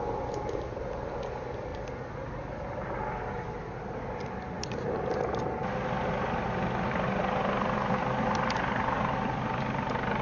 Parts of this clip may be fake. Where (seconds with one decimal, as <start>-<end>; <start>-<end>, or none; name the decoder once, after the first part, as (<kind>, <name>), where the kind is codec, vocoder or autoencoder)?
none